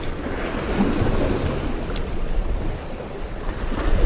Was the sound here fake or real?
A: real